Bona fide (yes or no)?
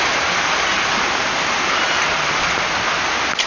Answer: yes